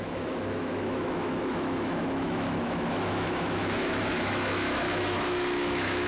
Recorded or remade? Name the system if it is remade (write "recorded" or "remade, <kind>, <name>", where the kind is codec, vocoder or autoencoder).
remade, autoencoder, DAC-VAE